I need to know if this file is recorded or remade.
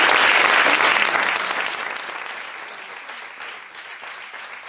recorded